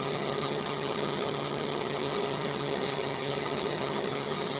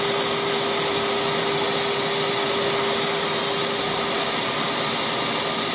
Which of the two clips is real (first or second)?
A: second